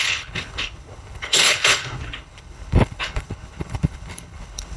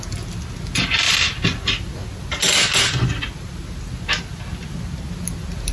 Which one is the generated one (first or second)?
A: first